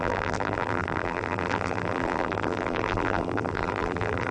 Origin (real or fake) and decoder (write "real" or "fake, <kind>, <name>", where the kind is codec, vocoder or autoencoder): fake, vocoder, BigVGAN v2